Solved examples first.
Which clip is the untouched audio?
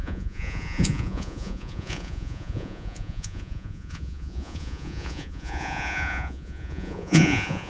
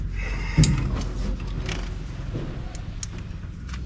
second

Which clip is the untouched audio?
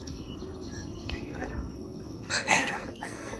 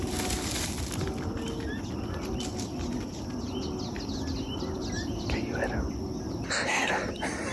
second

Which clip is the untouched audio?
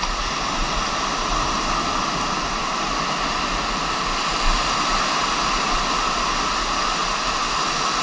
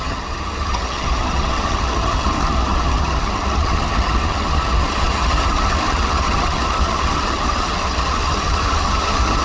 first